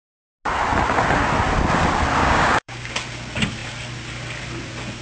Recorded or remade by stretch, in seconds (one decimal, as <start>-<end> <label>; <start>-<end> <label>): 0.0-2.2 recorded; 2.2-2.9 remade; 2.9-5.0 recorded